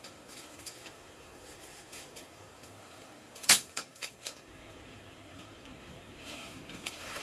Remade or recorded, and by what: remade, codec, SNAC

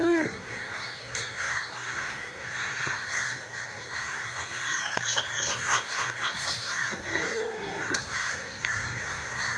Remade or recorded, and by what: remade, codec, SNAC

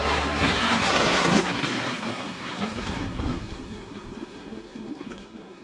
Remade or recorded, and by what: remade, codec, SNAC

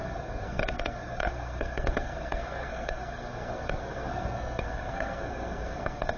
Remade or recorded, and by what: remade, codec, SNAC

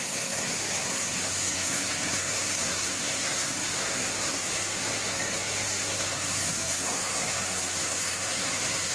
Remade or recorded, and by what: remade, codec, SNAC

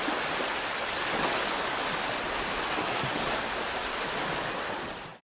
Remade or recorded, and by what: recorded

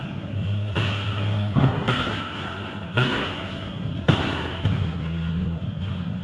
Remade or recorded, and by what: remade, codec, SNAC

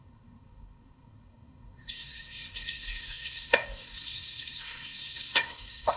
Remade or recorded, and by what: remade, codec, SNAC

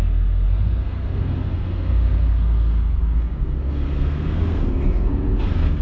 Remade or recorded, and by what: remade, codec, SNAC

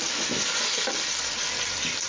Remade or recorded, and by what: recorded